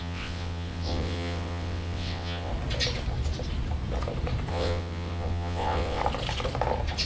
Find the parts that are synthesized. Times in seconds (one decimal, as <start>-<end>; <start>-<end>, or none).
0.0-2.5; 4.5-6.0